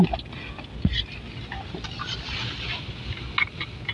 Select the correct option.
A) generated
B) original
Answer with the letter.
B